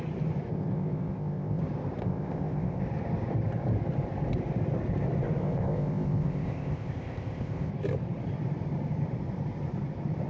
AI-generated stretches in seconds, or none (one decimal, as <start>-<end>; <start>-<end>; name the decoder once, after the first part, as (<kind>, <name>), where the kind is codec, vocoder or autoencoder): 0.5-1.6 (codec, ZipCodec); 2.0-2.8; 5.4-7.7